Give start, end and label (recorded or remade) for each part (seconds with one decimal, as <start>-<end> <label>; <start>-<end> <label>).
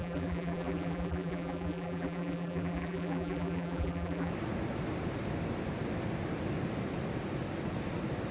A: 0.0-4.3 remade; 4.3-8.3 recorded